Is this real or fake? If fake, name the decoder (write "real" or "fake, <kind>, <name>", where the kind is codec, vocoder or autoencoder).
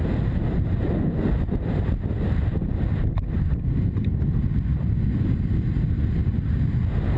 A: real